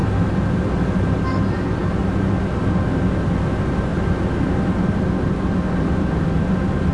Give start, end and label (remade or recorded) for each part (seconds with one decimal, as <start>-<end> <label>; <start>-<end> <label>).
0.0-6.9 recorded